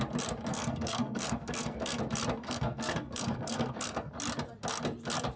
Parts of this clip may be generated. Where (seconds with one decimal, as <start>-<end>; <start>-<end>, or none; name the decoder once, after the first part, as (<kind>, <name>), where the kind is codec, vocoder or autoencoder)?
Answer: 0.5-2.0 (codec, SNAC); 2.4-4.1